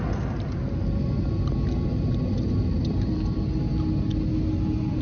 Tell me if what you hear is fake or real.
real